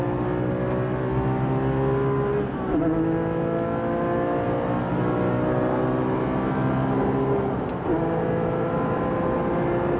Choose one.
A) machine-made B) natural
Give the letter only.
B